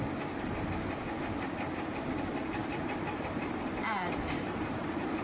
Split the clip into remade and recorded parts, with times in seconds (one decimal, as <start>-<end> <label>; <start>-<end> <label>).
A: 0.0-2.6 recorded; 2.6-5.2 remade